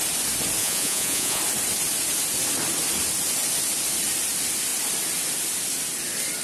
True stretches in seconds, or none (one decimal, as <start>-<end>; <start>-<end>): 0.0-0.6; 1.4-6.4